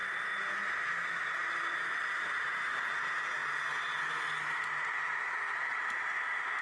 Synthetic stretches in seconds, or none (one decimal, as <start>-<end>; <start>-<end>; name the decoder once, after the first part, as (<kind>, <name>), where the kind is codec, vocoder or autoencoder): none